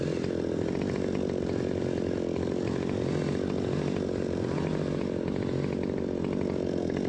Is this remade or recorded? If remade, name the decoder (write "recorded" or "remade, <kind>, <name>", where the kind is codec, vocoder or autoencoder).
recorded